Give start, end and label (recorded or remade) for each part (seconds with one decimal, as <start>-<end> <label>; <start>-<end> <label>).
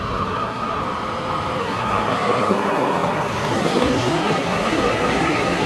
0.0-0.8 remade; 0.8-1.6 recorded; 1.6-5.7 remade